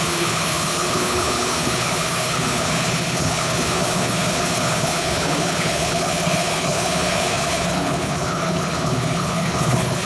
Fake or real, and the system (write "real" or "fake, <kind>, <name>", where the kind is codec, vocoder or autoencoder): fake, codec, HILCodec